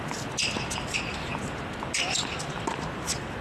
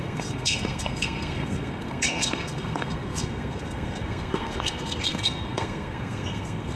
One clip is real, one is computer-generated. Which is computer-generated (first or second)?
second